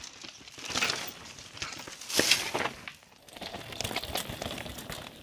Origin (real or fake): real